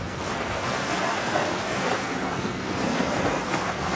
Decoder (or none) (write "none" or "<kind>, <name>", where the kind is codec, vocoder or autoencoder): codec, SNAC